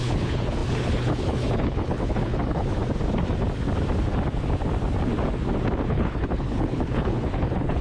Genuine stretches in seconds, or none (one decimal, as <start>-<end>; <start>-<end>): 2.8-5.9